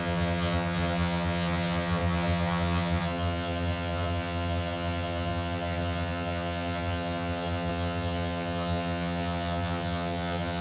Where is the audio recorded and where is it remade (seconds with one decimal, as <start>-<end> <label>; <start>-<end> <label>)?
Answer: 0.0-10.6 remade